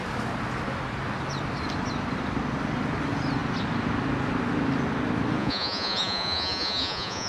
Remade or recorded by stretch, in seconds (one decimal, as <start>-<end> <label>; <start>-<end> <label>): 0.0-5.4 recorded; 5.4-7.3 remade